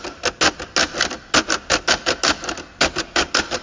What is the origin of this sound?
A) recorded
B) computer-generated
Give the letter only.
A